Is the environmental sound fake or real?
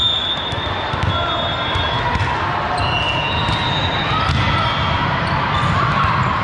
real